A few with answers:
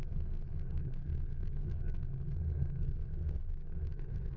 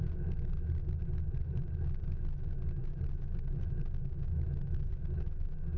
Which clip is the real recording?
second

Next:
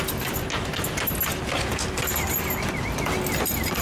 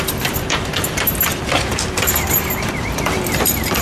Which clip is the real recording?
first